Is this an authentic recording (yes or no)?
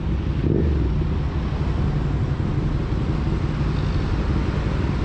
yes